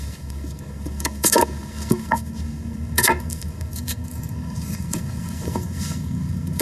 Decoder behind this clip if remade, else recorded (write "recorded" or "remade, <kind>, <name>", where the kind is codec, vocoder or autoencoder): remade, codec, SNAC